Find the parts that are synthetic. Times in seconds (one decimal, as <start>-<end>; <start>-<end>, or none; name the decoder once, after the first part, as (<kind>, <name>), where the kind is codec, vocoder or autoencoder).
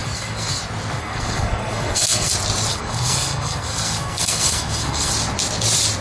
0.0-0.6 (codec, SNAC); 1.0-2.3; 2.7-5.1